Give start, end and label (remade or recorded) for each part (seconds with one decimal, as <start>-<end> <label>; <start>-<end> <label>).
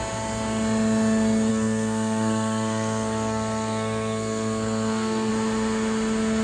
0.0-1.5 recorded; 1.5-5.3 remade; 5.3-6.4 recorded